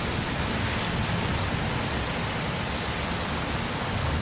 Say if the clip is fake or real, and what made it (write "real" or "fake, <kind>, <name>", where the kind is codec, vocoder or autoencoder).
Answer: real